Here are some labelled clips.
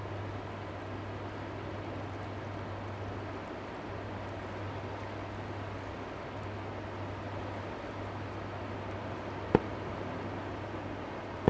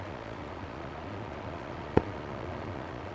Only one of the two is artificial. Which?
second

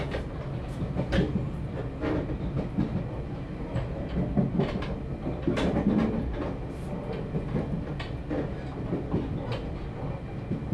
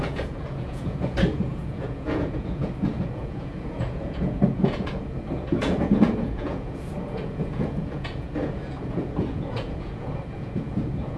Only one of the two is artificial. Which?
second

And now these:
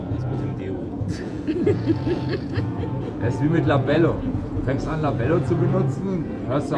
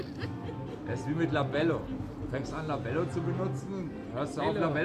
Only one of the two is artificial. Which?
first